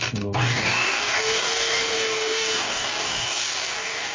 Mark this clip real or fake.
fake